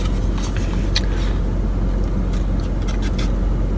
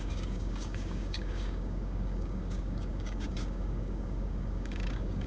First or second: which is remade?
second